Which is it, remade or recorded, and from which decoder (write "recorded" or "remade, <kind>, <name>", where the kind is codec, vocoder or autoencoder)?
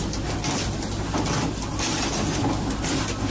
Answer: recorded